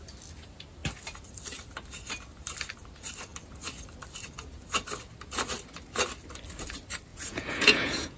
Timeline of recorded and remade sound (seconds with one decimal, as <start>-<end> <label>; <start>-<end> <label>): 0.0-7.1 recorded; 7.1-8.2 remade